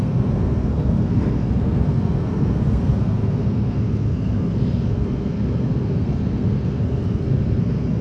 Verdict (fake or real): fake